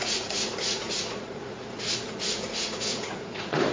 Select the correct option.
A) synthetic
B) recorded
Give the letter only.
A